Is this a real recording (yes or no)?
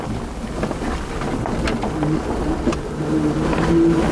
yes